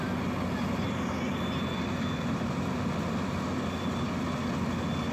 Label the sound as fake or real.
real